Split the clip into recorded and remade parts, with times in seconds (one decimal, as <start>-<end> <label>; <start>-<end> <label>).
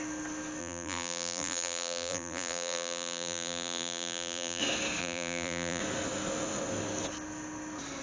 0.0-0.6 recorded; 0.6-4.6 remade; 4.6-5.0 recorded; 5.0-5.8 remade; 5.8-8.0 recorded